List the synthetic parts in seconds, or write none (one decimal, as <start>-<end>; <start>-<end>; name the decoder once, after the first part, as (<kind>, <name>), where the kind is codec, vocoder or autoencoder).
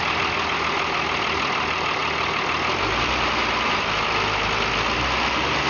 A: 1.0-2.0 (vocoder, BigVGAN v2)